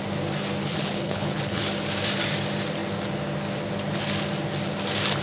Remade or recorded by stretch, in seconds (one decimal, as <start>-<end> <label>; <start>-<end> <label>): 0.0-0.6 recorded; 0.6-1.6 remade; 1.6-5.2 recorded